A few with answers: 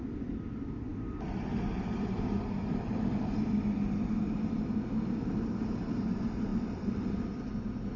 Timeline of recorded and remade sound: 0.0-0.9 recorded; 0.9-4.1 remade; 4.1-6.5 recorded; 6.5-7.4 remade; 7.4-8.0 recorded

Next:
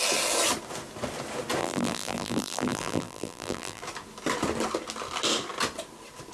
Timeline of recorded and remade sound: 0.0-1.6 recorded; 1.6-3.8 remade; 3.8-6.3 recorded

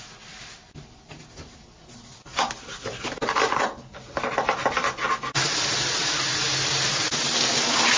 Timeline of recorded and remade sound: 0.0-8.0 recorded